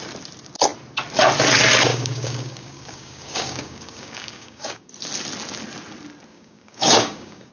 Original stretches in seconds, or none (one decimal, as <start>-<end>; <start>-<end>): 0.0-1.9; 4.9-6.3